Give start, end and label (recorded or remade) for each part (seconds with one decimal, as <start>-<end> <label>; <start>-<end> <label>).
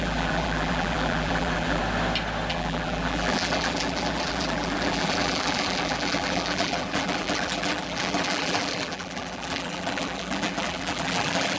0.0-1.8 remade; 1.8-2.5 recorded; 2.5-11.6 remade